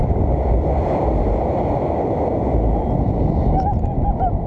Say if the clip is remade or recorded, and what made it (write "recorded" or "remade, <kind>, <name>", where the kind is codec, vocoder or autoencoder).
remade, vocoder, BigVGAN v2